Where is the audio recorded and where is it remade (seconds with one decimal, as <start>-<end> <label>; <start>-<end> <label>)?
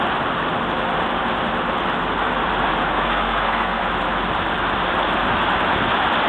0.0-2.9 recorded; 2.9-3.8 remade; 3.8-6.3 recorded